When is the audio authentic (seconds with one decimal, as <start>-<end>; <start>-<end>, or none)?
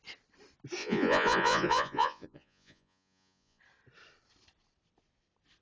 0.0-0.8; 3.6-5.6